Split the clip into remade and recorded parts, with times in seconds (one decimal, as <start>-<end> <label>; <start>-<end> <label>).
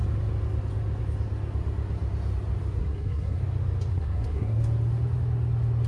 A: 0.0-2.8 recorded; 2.8-3.4 remade; 3.4-3.9 recorded; 3.9-4.6 remade; 4.6-5.9 recorded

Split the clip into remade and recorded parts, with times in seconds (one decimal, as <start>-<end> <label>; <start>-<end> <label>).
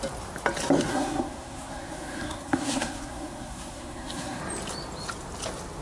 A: 0.0-0.9 recorded; 0.9-4.4 remade; 4.4-5.8 recorded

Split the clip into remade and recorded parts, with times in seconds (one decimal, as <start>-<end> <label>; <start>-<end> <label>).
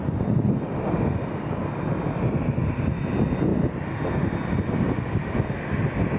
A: 0.0-6.2 recorded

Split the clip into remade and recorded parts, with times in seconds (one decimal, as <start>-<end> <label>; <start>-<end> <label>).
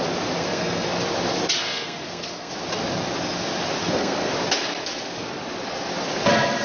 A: 0.0-0.4 recorded; 0.4-0.9 remade; 0.9-1.6 recorded; 1.6-2.5 remade; 2.5-3.8 recorded; 3.8-4.3 remade; 4.3-6.6 recorded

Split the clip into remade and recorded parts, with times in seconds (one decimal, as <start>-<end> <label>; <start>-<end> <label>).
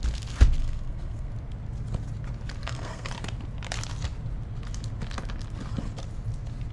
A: 0.0-0.6 recorded; 0.6-1.3 remade; 1.3-2.6 recorded; 2.6-3.1 remade; 3.1-6.7 recorded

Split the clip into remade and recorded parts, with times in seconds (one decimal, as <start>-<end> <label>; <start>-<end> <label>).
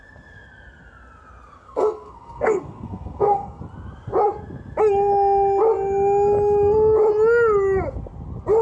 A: 0.0-1.6 recorded; 1.6-3.6 remade; 3.6-8.6 recorded